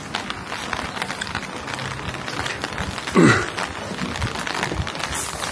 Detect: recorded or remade recorded